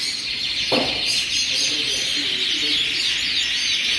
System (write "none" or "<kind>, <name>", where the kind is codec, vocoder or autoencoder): none